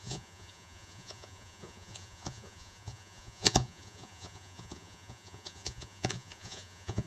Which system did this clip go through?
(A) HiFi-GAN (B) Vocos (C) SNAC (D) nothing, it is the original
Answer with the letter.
B